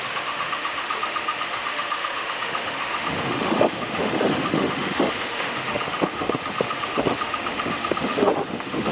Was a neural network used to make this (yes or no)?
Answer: yes